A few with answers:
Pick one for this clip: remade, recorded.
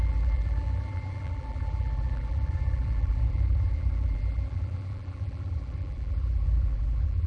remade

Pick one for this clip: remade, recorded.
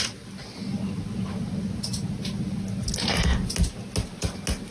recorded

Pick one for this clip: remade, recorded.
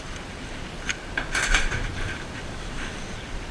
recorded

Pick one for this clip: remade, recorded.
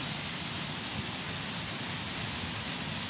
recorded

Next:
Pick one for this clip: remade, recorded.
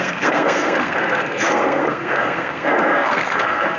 remade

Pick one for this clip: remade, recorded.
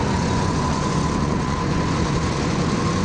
remade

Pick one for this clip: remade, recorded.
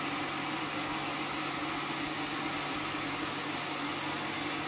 recorded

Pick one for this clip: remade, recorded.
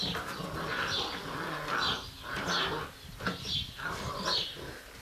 recorded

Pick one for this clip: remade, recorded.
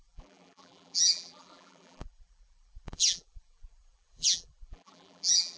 remade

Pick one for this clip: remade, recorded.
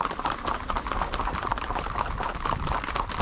recorded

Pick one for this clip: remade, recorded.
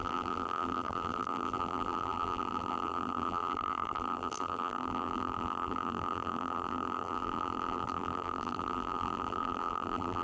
remade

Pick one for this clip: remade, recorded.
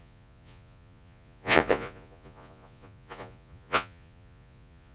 remade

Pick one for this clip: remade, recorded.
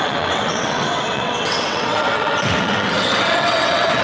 remade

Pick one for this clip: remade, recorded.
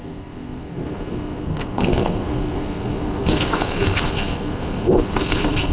remade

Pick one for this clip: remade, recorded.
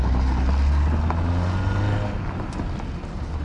recorded